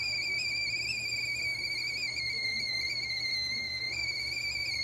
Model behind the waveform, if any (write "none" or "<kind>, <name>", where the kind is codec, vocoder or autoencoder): none